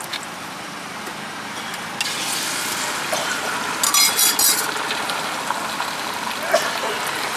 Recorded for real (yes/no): yes